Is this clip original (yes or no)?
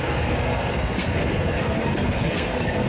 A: no